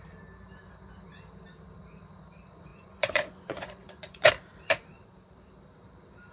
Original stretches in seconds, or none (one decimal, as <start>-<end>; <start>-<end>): 0.0-2.7; 4.3-6.3